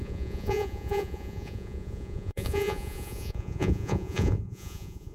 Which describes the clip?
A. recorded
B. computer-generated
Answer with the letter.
B